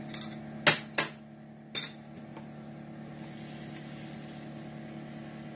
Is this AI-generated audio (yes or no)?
no